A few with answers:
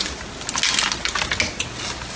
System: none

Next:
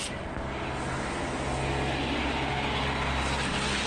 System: none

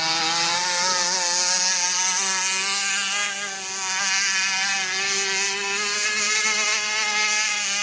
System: none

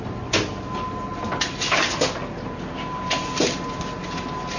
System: none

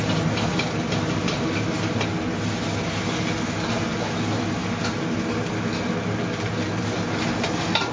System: none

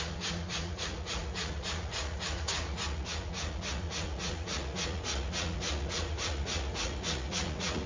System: vocoder, Vocos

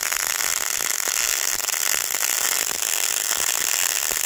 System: none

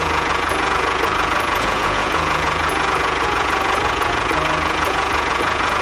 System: vocoder, Vocos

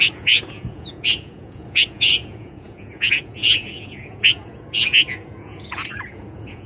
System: vocoder, Vocos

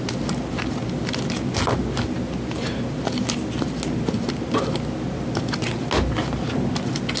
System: none